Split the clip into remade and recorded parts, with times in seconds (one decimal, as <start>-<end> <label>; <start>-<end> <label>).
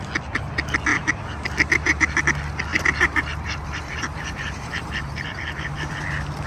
0.0-0.9 recorded; 0.9-2.2 remade; 2.2-2.7 recorded; 2.7-5.9 remade; 5.9-6.5 recorded